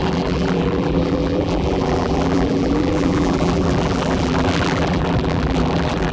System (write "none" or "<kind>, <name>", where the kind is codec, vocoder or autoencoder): vocoder, BigVGAN v2